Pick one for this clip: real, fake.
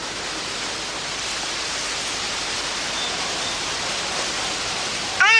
real